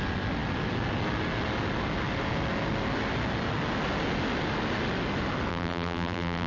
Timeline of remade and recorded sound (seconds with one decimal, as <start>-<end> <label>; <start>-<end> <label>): 0.0-5.5 recorded; 5.5-6.5 remade